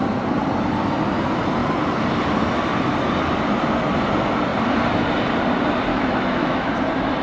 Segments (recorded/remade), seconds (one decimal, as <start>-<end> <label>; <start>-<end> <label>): 0.0-5.9 recorded; 5.9-6.7 remade; 6.7-7.2 recorded